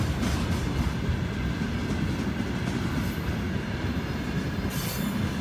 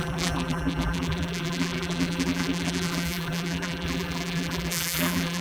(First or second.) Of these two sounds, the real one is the first